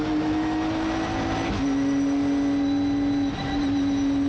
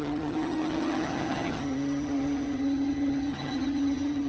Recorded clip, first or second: first